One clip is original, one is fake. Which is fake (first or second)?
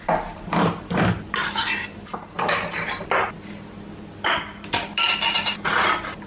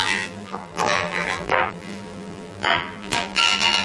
second